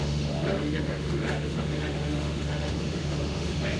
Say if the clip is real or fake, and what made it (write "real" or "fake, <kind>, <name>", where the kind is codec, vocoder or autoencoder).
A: fake, autoencoder, DAC-VAE